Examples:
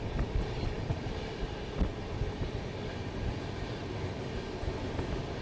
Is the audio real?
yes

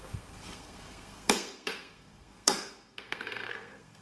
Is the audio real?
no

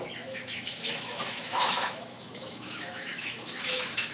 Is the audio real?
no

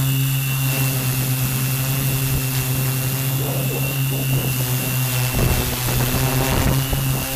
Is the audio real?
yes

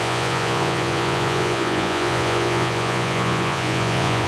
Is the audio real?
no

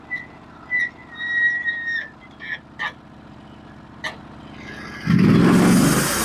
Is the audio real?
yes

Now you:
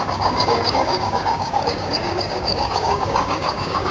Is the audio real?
no